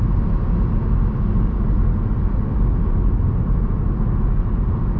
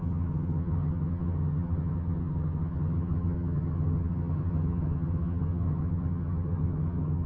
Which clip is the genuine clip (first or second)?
first